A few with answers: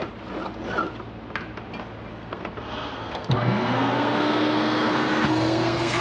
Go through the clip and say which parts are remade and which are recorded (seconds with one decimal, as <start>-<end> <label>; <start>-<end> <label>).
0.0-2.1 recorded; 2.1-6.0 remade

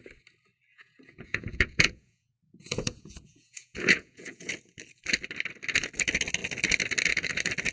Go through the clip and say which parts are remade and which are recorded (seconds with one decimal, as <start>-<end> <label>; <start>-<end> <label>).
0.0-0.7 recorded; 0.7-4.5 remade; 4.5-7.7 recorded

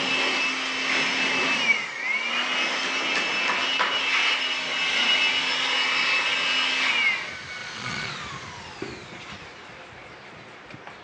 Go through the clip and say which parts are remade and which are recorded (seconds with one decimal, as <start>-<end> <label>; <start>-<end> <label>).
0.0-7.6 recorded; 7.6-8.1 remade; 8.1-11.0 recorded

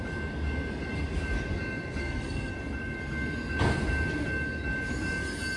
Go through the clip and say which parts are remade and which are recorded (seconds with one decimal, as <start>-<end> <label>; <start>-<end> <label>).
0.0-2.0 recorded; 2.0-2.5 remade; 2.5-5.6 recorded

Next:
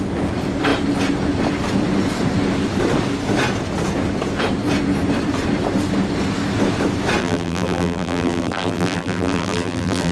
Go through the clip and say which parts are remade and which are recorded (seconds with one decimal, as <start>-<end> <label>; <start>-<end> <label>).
0.0-7.2 recorded; 7.2-10.1 remade

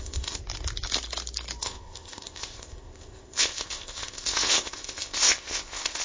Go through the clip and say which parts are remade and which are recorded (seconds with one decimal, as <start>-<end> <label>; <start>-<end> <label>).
0.0-0.4 remade; 0.4-1.6 recorded; 1.6-6.0 remade